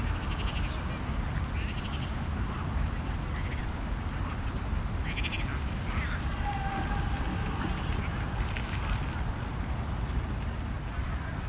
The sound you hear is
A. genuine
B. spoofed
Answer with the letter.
A